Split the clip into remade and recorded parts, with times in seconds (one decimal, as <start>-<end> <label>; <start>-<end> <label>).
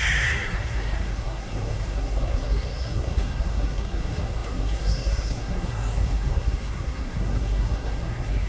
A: 0.0-8.5 remade